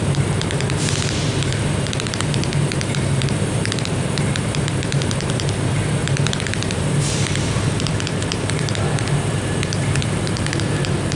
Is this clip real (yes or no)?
no